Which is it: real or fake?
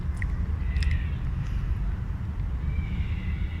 real